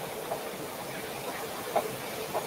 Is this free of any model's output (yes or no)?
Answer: yes